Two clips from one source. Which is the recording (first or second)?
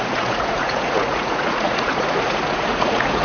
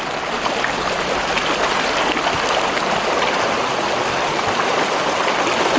second